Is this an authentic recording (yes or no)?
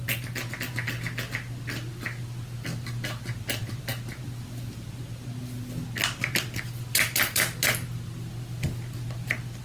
yes